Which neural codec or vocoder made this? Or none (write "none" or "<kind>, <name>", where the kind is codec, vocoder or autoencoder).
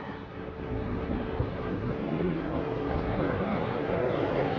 codec, SNAC